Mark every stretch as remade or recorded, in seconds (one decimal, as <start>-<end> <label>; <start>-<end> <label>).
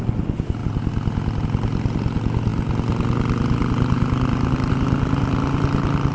0.0-6.1 recorded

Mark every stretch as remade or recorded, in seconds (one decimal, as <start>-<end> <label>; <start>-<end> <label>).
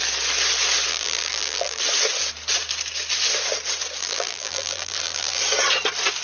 0.0-0.9 recorded; 0.9-1.8 remade; 1.8-4.0 recorded; 4.0-5.4 remade; 5.4-6.2 recorded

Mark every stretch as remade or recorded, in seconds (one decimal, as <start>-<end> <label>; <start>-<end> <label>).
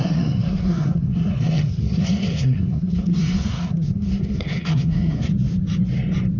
0.0-5.3 remade; 5.3-6.4 recorded